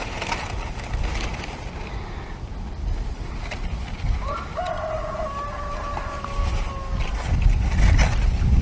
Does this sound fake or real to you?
real